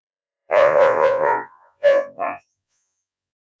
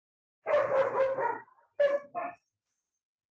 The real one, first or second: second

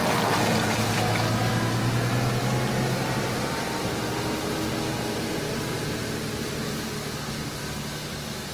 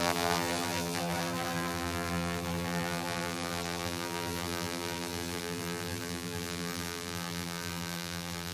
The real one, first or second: first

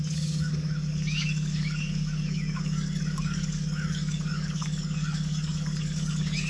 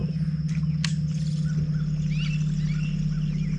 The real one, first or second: second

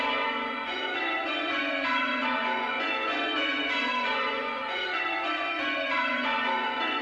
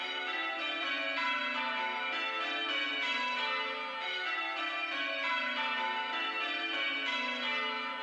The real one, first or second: second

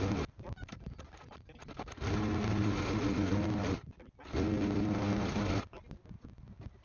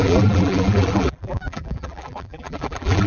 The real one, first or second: first